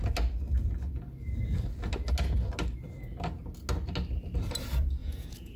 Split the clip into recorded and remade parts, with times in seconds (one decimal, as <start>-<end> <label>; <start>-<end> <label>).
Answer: 0.0-5.0 recorded; 5.0-5.6 remade